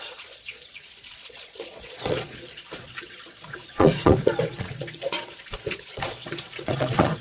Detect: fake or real fake